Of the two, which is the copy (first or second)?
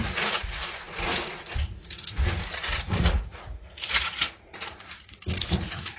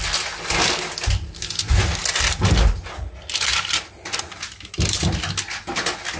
first